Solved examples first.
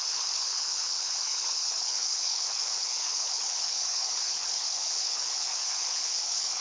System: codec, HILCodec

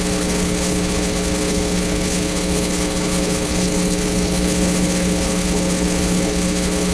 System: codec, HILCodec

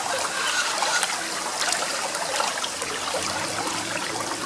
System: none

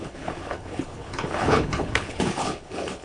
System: codec, HILCodec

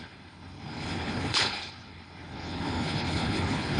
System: codec, HILCodec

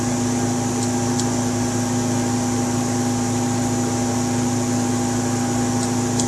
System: none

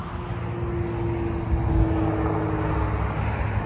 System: none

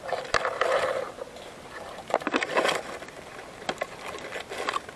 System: none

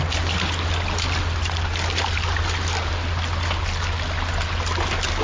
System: none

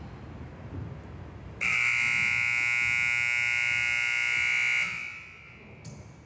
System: none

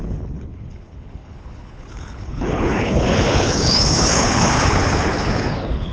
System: codec, HILCodec